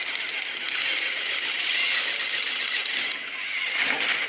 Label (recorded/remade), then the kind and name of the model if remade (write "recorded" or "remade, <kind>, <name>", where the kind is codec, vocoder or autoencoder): recorded